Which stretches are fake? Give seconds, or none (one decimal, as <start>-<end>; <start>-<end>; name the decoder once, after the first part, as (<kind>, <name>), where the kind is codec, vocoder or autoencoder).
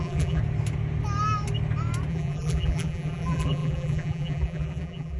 0.0-0.4 (vocoder, BigVGAN v2); 2.1-5.2